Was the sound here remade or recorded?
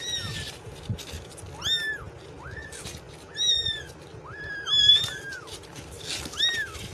recorded